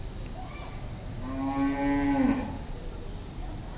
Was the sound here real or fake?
real